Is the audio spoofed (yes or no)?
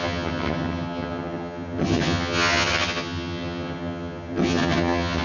yes